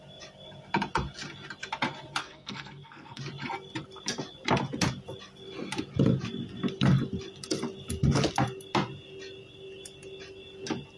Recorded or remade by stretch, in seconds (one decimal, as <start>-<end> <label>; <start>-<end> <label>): 0.0-2.2 recorded; 2.2-3.2 remade; 3.2-11.0 recorded